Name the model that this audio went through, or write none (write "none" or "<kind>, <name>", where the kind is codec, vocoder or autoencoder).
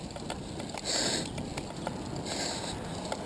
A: none